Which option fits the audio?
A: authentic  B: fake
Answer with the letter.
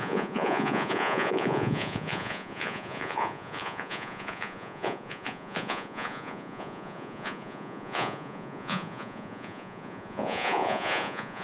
B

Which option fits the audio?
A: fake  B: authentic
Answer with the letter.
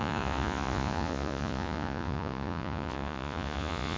A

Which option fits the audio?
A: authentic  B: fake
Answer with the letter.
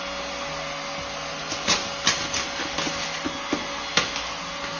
A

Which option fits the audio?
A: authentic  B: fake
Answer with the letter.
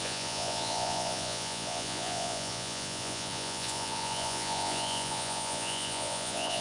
B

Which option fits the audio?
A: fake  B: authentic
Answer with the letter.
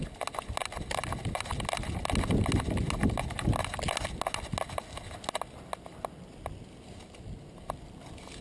B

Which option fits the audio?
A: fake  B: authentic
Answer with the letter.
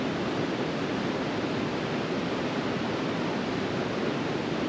B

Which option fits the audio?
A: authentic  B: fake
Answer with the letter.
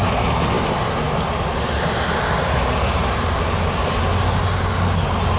A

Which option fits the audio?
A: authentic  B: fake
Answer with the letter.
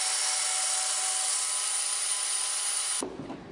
A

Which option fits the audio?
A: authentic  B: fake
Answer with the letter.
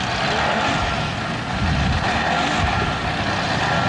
A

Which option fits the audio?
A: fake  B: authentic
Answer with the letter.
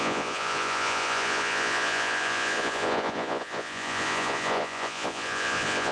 A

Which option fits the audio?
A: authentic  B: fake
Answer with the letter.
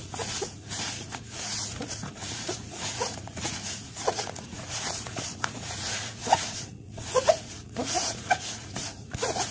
B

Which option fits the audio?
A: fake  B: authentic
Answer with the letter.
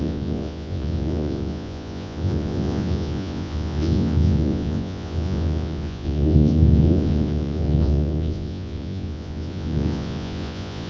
A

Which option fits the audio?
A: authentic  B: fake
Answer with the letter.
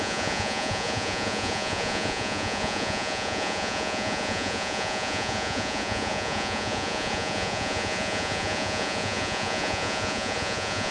B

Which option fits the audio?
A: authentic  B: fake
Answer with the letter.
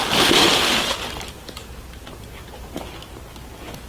A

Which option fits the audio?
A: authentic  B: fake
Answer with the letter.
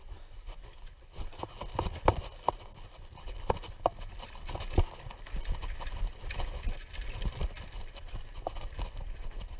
A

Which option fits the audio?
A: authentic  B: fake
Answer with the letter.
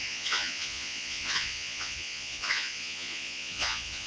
B